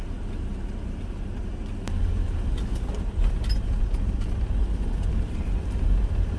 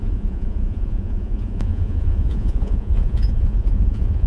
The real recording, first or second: first